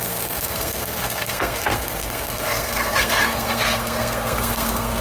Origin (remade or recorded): remade